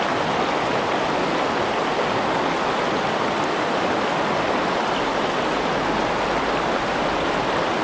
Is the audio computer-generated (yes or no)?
no